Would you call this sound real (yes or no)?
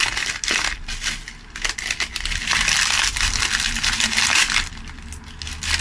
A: yes